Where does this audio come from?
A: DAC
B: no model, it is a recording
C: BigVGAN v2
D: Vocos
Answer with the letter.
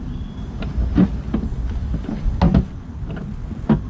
B